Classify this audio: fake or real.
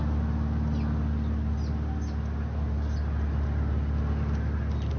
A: real